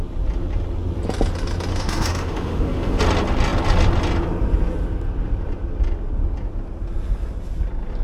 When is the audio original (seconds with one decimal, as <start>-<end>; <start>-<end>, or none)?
0.0-1.7; 3.0-8.0